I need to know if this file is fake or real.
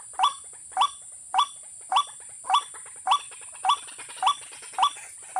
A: real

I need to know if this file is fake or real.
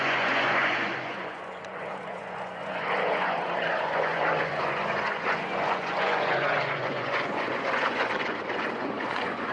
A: fake